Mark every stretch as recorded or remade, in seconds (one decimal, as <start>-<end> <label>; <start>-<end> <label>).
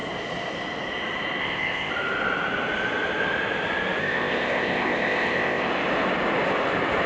0.0-1.4 recorded; 1.4-1.9 remade; 1.9-4.0 recorded; 4.0-5.7 remade; 5.7-7.1 recorded